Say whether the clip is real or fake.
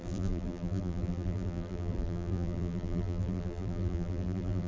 fake